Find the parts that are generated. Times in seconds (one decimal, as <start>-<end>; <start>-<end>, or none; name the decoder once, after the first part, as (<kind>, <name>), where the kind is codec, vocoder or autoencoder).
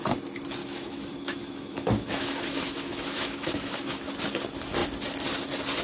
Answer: 0.6-4.1 (autoencoder, DAC-VAE)